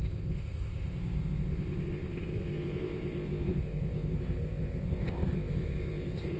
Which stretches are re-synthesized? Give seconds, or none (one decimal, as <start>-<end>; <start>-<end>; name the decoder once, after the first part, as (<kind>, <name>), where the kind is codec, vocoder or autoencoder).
0.0-6.4 (codec, ZipCodec)